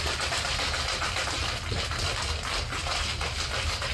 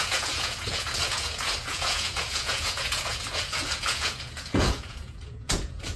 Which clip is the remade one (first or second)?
second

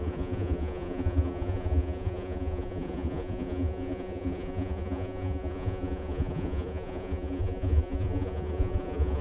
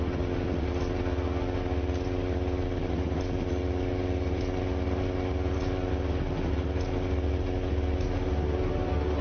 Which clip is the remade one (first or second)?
first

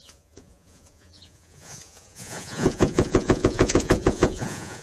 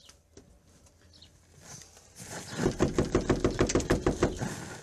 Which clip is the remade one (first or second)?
first